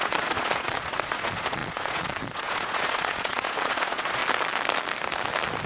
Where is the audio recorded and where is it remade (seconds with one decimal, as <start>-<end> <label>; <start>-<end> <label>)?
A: 0.0-4.2 remade; 4.2-5.7 recorded